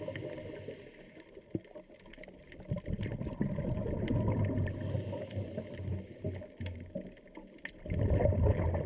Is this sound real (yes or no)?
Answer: yes